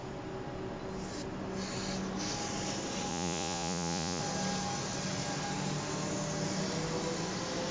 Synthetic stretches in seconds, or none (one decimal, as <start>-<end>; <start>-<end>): 3.1-4.2